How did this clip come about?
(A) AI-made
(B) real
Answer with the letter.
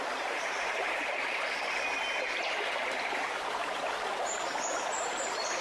B